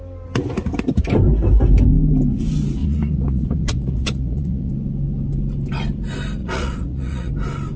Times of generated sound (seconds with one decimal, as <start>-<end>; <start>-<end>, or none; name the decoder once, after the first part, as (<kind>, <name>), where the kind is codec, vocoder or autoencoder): 2.8-4.7 (vocoder, Vocos); 6.4-7.3